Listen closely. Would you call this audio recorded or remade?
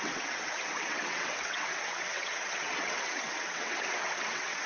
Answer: remade